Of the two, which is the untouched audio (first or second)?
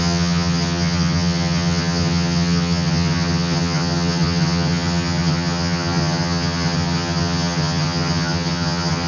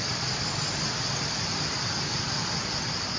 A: second